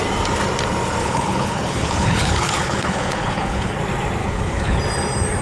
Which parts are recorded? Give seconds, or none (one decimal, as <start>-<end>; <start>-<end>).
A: 0.0-1.0; 3.8-4.2; 4.8-5.4